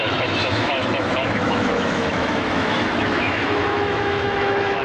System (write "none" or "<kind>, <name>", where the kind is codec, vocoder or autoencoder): autoencoder, DAC-VAE